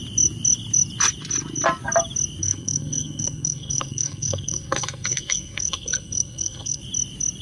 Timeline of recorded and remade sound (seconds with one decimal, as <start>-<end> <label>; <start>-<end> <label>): 0.0-2.4 recorded; 2.4-6.8 remade; 6.8-7.4 recorded